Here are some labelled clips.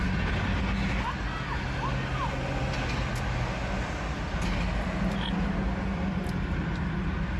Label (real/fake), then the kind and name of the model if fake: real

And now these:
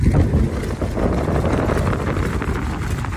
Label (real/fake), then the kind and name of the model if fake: real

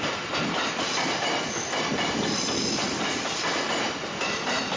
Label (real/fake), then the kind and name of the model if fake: fake, vocoder, BigVGAN v2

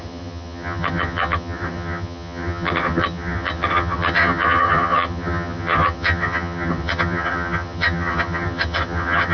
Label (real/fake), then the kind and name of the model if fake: fake, vocoder, HiFi-GAN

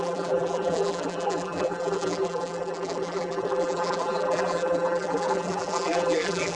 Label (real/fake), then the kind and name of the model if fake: fake, vocoder, BigVGAN v2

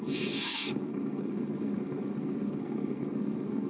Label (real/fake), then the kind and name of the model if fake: fake, codec, SNAC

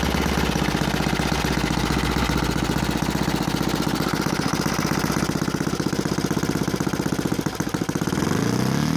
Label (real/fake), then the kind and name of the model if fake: real